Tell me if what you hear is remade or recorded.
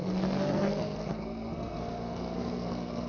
remade